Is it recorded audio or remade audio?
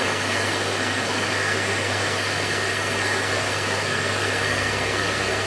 remade